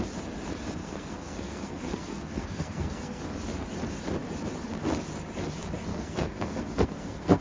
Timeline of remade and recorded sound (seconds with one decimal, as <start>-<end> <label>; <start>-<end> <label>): 0.0-0.8 recorded; 0.8-3.2 remade; 3.2-5.9 recorded; 5.9-7.4 remade